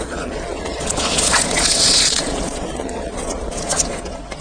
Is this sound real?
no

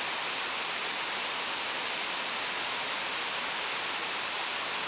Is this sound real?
yes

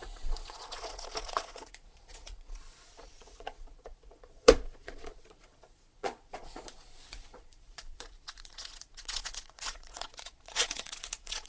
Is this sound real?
no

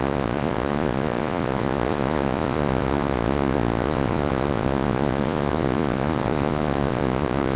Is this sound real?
no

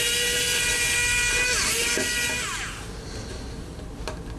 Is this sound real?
yes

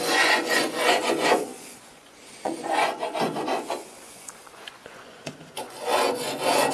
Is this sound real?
no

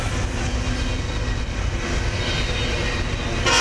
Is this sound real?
yes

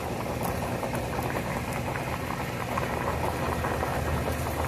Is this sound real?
yes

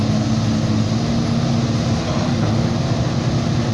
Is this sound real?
yes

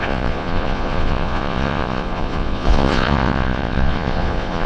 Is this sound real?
no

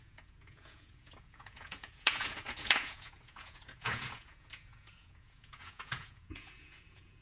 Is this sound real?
no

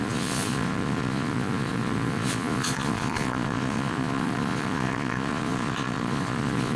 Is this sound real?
no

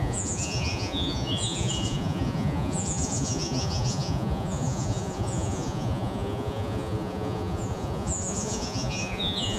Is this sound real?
no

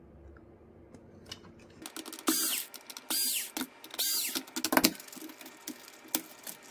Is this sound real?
yes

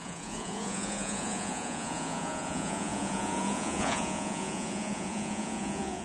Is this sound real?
no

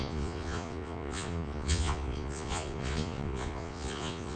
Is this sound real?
no